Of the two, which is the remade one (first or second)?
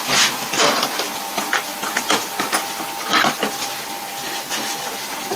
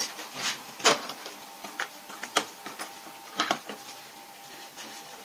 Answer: second